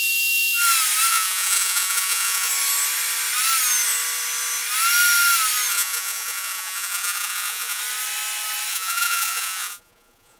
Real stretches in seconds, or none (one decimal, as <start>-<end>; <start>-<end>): 0.0-1.1; 2.5-5.7; 7.8-8.7